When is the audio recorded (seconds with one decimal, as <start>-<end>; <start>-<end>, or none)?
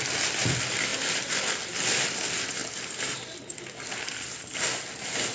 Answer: 0.0-5.3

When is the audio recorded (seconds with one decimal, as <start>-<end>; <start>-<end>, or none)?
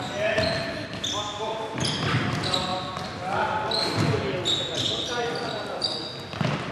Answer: 0.0-6.7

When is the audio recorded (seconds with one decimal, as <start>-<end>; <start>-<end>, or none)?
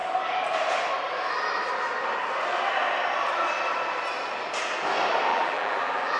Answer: 0.0-5.3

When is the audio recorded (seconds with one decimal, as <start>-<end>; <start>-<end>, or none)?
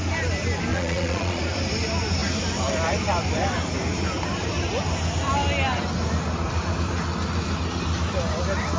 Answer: 0.0-0.7; 1.4-8.8